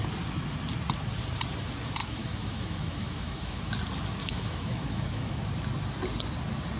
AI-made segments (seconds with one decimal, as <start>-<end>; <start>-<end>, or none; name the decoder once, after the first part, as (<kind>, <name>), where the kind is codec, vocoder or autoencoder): 2.0-3.7 (autoencoder, DAC-VAE); 4.2-5.4